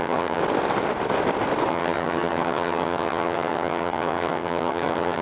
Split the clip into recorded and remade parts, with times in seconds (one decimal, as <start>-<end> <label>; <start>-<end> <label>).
0.0-0.4 remade; 0.4-1.7 recorded; 1.7-5.2 remade